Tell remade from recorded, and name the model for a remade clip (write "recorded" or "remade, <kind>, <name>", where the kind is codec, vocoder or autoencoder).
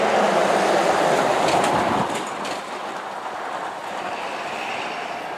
recorded